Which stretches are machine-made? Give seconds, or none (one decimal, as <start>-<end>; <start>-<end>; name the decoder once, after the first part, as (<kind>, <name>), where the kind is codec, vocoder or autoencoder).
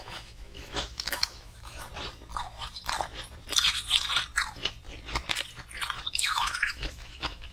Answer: 0.0-1.9 (autoencoder, DAC-VAE); 6.1-7.5